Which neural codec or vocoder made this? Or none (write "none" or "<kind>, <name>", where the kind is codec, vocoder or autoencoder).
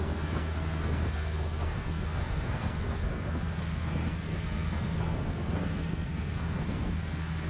codec, SNAC